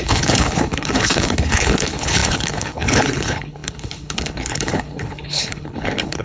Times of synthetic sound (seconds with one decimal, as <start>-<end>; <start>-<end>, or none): 0.0-6.2